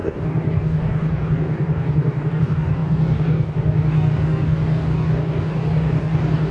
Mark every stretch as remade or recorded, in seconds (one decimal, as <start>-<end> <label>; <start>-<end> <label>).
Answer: 0.0-6.5 remade